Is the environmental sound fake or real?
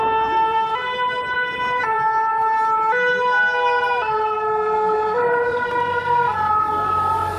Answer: fake